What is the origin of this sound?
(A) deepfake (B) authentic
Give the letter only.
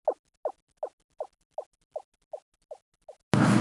B